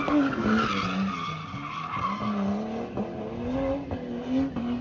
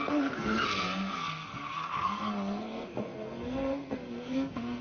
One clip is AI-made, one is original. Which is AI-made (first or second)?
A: second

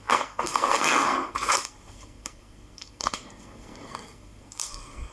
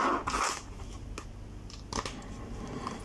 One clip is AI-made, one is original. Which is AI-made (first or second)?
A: first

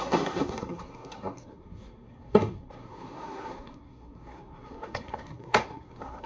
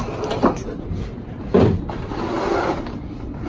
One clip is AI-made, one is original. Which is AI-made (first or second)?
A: first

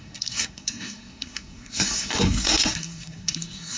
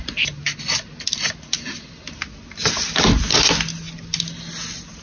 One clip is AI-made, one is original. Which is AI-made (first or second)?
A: first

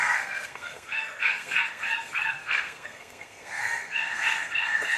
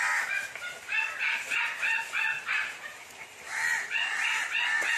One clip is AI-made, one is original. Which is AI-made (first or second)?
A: first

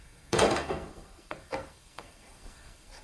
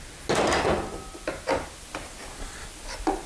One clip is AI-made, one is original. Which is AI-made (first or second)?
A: first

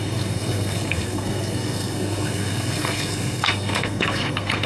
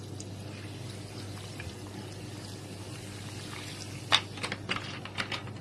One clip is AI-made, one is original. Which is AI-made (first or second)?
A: first